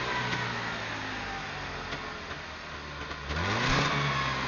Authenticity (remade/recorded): recorded